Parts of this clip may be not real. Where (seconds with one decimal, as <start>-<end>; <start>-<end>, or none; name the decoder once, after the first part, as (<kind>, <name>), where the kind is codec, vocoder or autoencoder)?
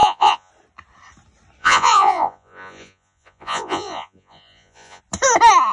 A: 0.0-0.5 (vocoder, Vocos); 1.6-5.0